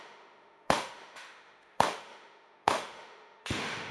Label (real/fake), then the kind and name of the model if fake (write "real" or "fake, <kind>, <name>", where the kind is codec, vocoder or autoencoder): fake, autoencoder, DAC-VAE